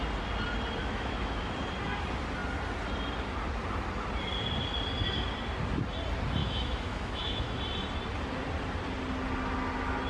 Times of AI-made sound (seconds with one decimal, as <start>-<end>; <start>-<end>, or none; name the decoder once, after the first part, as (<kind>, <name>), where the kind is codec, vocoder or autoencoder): 0.8-1.5 (autoencoder, DAC-VAE); 6.4-7.6